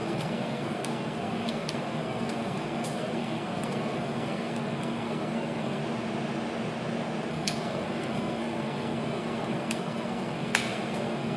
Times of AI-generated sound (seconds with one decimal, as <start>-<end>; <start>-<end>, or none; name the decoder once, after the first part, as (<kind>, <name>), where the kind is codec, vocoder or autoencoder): 0.0-5.8 (codec, SNAC); 7.3-11.4